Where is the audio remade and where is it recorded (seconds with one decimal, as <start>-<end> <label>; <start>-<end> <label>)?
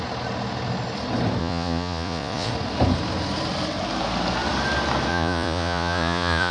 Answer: 0.0-1.4 recorded; 1.4-2.5 remade; 2.5-5.1 recorded; 5.1-6.5 remade